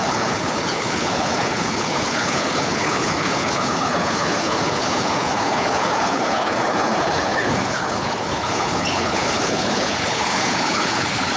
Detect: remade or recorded remade